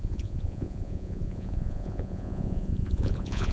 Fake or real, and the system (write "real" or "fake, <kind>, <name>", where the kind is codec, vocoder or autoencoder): fake, vocoder, Vocos